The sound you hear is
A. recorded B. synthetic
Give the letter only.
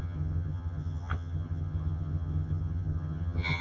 B